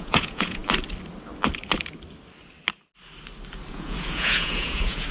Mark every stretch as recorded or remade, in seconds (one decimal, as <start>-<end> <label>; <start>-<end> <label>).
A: 0.0-0.6 remade; 0.6-3.7 recorded; 3.7-5.1 remade

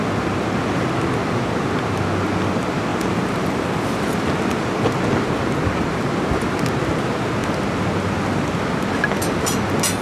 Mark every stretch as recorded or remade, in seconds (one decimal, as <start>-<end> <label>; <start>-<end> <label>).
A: 0.0-2.9 recorded; 2.9-4.1 remade; 4.1-10.0 recorded

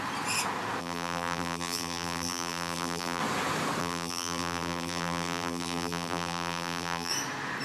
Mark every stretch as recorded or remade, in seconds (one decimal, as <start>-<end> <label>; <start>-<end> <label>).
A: 0.0-0.8 recorded; 0.8-3.2 remade; 3.2-3.8 recorded; 3.8-7.1 remade; 7.1-7.6 recorded

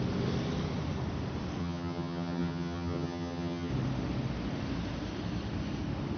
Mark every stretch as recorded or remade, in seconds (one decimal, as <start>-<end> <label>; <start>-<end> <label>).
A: 0.0-1.6 recorded; 1.6-3.7 remade; 3.7-6.2 recorded

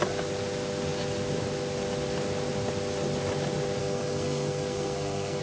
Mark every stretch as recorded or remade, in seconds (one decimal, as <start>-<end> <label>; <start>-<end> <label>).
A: 0.0-3.8 recorded; 3.8-5.4 remade

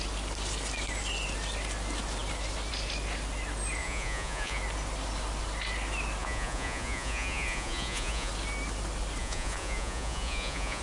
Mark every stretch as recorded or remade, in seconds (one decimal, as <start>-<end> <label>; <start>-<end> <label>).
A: 0.0-3.8 recorded; 3.8-4.6 remade; 4.6-6.2 recorded; 6.2-8.3 remade; 8.3-9.2 recorded; 9.2-10.8 remade